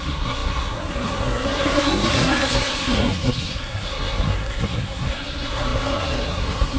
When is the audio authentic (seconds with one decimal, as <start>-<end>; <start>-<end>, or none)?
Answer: none